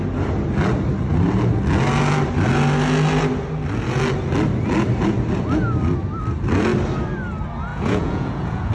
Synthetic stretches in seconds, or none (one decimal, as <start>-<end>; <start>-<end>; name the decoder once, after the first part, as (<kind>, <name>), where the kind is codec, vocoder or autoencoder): 7.7-8.7 (vocoder, Vocos)